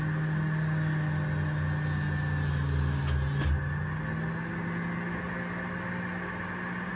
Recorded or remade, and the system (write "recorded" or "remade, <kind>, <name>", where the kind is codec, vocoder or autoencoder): recorded